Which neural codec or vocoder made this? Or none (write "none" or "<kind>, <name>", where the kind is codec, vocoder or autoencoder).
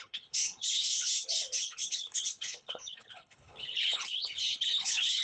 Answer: codec, HILCodec